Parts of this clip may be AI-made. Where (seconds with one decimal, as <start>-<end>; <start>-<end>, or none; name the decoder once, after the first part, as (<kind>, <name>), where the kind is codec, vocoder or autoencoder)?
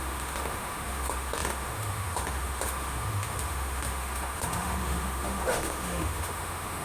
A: 0.0-6.8 (autoencoder, DAC-VAE)